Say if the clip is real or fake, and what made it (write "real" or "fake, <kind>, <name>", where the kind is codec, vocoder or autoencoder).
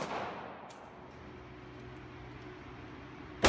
real